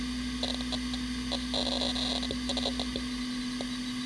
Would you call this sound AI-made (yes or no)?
no